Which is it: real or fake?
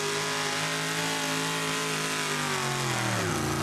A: real